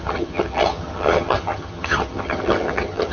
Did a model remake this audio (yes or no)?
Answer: yes